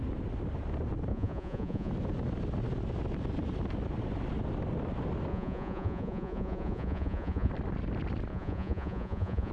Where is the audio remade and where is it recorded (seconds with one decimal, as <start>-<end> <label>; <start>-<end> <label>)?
0.0-1.1 recorded; 1.1-1.9 remade; 1.9-5.3 recorded; 5.3-7.5 remade; 7.5-8.3 recorded; 8.3-9.5 remade